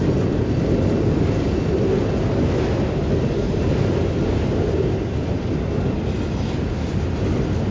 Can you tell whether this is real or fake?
real